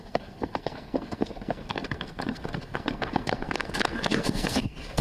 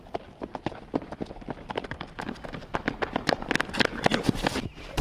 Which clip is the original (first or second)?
second